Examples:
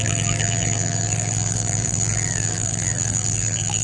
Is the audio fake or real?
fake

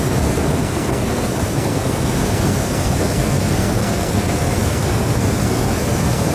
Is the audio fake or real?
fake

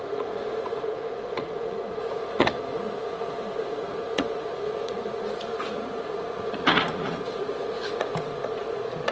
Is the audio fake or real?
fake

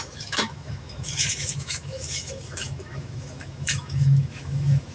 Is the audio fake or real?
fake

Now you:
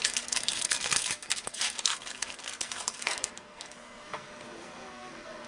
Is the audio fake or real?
fake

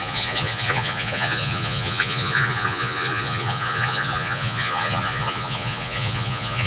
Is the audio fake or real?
fake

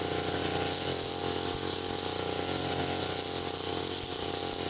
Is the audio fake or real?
real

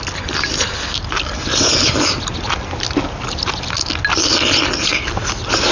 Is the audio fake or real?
real